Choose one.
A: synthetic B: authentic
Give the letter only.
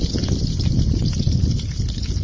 B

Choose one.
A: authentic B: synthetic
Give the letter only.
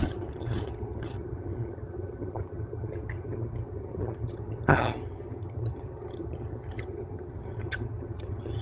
B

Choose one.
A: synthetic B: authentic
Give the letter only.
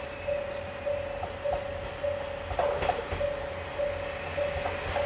B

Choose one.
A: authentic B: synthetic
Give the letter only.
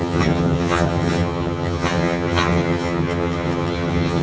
B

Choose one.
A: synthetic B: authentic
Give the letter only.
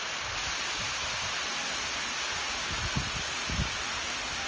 B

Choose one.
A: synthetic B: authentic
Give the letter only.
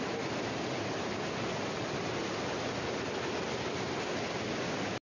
B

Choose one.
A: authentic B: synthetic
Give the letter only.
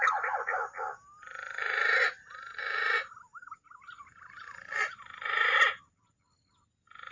A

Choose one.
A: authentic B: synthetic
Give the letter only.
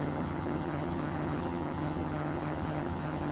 B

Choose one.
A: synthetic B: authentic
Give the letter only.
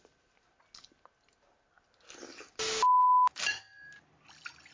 B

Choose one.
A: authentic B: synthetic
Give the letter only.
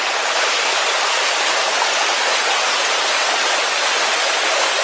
A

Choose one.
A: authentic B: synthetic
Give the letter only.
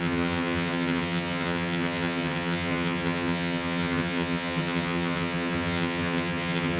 B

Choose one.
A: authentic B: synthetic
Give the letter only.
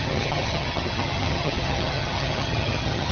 B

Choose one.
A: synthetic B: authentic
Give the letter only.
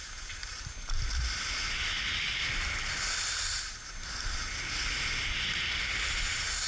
B